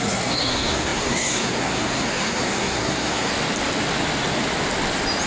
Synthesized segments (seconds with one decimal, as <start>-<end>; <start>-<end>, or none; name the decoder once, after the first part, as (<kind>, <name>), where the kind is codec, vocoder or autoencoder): 0.0-3.3 (codec, SNAC)